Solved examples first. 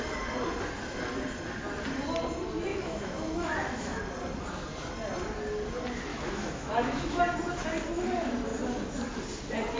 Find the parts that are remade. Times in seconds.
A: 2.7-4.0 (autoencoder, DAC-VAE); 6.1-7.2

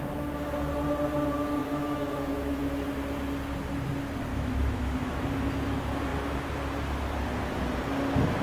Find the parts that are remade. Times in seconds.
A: 1.6-2.6 (autoencoder, DAC-VAE); 4.3-5.2

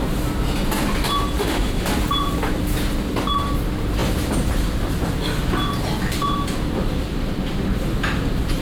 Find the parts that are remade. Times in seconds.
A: 1.4-1.9 (autoencoder, DAC-VAE)

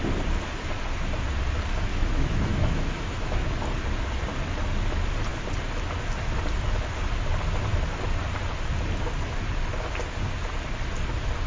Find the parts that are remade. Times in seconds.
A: 1.9-3.5 (autoencoder, DAC-VAE)